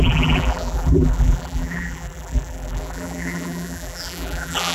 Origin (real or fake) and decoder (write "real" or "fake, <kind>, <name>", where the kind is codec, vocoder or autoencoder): fake, vocoder, BigVGAN v2